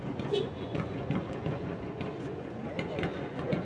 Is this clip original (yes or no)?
no